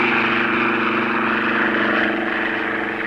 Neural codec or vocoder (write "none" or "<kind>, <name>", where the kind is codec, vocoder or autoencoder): none